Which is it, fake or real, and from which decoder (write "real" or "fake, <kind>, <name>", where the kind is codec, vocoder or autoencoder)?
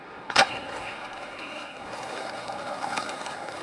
fake, codec, SNAC